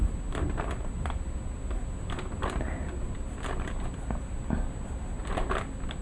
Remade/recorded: recorded